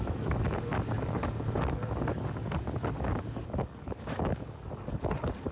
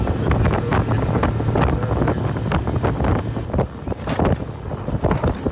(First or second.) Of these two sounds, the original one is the second